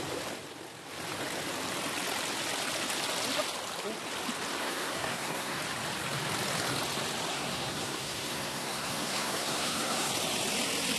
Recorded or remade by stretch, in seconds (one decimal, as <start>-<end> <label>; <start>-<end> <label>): 0.0-4.6 recorded; 4.6-5.6 remade; 5.6-7.3 recorded; 7.3-10.1 remade; 10.1-11.0 recorded